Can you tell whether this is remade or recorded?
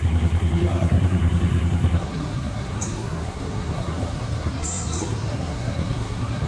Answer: remade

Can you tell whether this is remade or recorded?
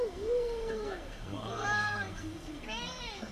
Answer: remade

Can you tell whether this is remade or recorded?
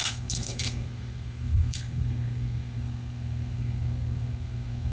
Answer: remade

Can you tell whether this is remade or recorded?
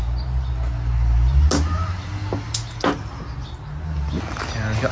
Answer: recorded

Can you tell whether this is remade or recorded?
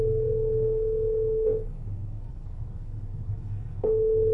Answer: remade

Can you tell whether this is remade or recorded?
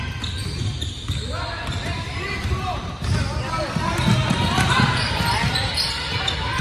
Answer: recorded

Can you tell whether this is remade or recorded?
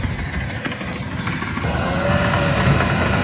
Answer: recorded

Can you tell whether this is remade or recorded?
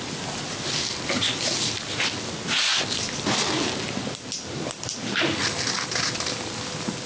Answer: recorded